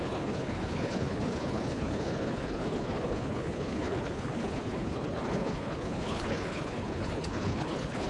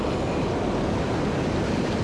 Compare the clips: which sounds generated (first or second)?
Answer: first